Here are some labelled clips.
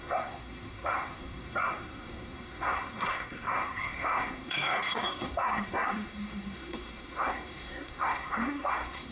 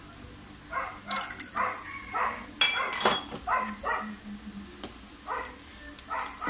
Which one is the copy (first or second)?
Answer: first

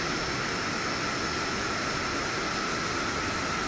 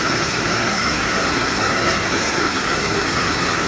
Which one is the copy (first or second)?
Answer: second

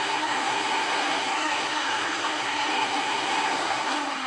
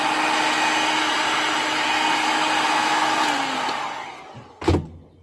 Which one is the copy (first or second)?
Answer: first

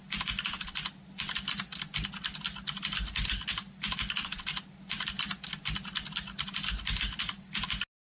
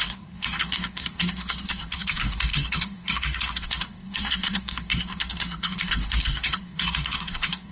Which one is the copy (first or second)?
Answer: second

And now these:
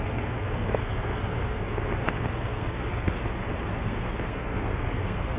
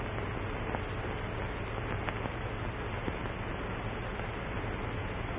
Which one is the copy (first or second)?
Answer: first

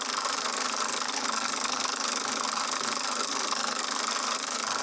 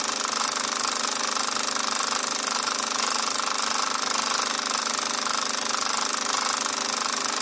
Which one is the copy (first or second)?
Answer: first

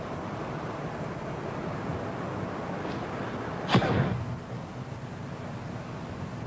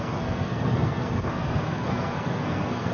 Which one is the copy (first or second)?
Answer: second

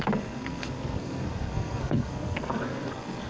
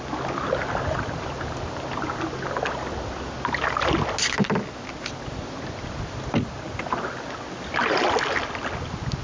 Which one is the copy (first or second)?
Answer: first